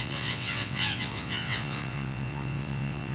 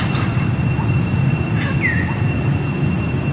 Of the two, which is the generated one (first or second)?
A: first